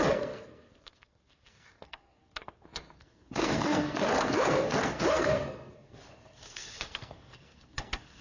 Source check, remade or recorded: remade